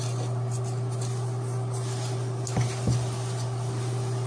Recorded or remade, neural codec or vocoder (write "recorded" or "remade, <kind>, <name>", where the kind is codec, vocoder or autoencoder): recorded